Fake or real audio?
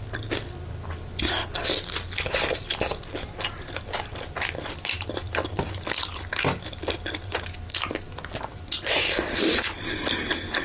real